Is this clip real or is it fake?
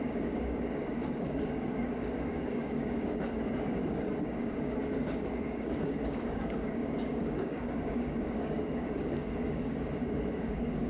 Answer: fake